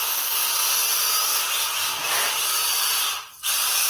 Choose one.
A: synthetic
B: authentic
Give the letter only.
B